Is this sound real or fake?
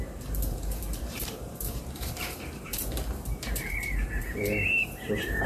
fake